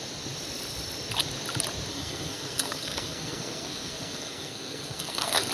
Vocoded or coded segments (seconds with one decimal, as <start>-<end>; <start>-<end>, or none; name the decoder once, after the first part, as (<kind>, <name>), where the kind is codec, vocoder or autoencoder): 1.9-5.5 (codec, SNAC)